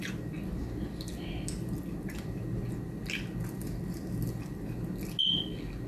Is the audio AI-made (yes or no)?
no